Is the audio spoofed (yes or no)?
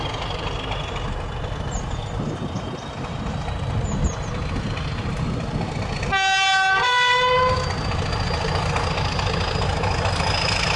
no